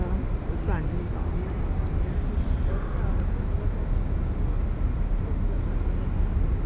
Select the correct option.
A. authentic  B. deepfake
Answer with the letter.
A